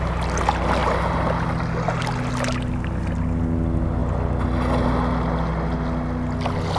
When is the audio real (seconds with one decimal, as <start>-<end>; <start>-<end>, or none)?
0.0-6.8